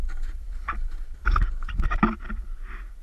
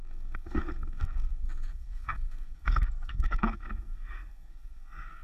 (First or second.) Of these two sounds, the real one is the first